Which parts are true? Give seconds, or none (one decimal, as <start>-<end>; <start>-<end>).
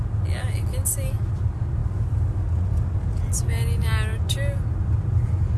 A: 0.0-5.6